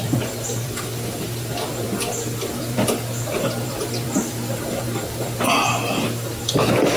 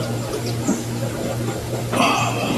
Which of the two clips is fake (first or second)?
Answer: first